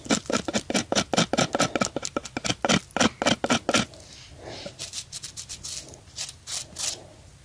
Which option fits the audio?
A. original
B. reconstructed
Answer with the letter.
A